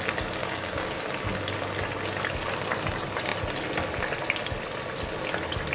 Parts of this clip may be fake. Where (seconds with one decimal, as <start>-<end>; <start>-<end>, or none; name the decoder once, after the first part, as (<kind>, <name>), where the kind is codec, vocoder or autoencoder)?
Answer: 0.4-1.0 (codec, DAC)